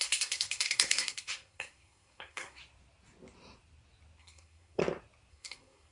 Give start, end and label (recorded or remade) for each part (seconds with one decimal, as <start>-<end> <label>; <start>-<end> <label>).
0.0-2.6 remade; 2.6-4.2 recorded; 4.2-4.8 remade; 4.8-5.3 recorded; 5.3-5.9 remade